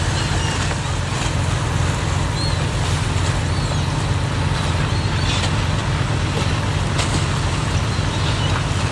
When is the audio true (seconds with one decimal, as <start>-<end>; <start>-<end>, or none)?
0.0-8.9